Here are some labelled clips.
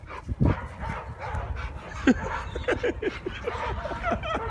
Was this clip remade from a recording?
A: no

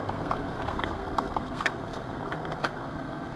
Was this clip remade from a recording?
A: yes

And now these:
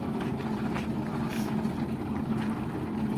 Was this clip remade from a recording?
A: no